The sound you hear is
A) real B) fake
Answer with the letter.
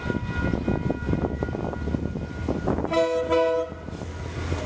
A